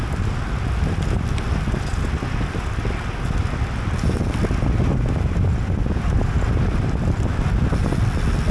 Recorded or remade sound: recorded